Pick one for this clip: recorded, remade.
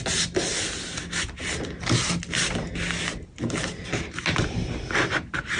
recorded